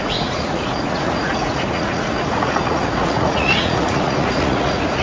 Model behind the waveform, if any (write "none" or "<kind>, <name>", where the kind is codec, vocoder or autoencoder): vocoder, Vocos